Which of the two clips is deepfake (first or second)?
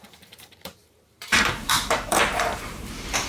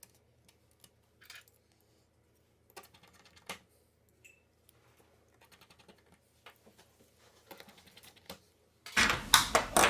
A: first